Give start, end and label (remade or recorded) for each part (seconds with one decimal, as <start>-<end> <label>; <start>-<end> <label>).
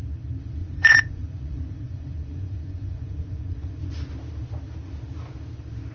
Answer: 0.0-0.6 recorded; 0.6-4.1 remade; 4.1-5.9 recorded